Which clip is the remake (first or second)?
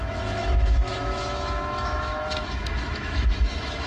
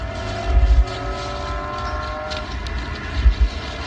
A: first